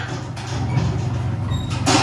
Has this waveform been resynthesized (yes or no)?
no